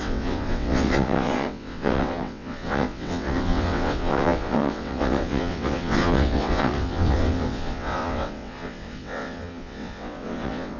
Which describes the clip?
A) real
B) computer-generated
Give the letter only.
B